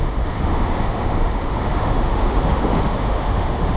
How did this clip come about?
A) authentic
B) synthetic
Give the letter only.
B